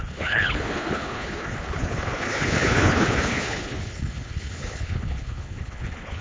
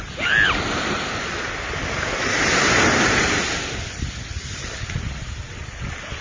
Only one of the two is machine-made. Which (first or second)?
first